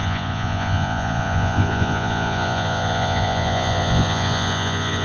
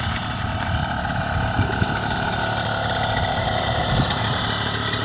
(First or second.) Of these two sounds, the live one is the second